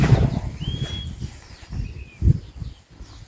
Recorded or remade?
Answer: recorded